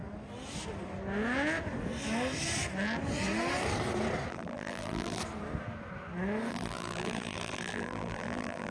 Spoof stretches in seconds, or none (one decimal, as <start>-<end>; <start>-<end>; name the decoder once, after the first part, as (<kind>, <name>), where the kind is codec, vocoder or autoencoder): 4.3-5.2 (vocoder, BigVGAN v2); 6.5-8.7